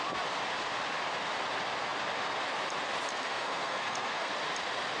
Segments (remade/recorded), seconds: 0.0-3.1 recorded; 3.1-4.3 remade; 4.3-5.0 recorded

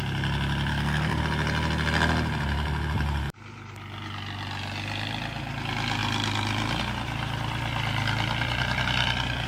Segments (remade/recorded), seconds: 0.0-0.7 recorded; 0.7-1.2 remade; 1.2-9.5 recorded

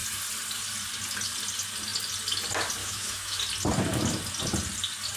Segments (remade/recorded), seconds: 0.0-2.8 recorded; 2.8-3.4 remade; 3.4-5.2 recorded